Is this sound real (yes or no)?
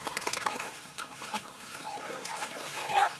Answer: no